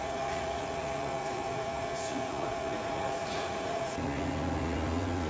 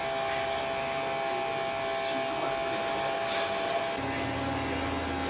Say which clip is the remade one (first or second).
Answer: first